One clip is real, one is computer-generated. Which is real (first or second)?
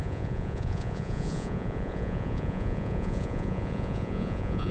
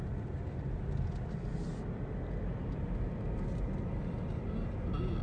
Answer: second